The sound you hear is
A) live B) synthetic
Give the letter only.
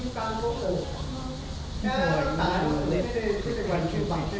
A